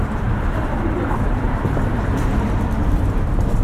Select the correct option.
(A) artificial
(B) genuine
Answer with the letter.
A